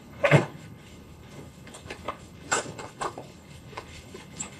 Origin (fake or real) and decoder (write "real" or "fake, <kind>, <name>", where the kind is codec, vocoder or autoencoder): fake, codec, HILCodec